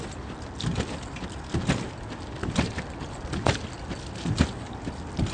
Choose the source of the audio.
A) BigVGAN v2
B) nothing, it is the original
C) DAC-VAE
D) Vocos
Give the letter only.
B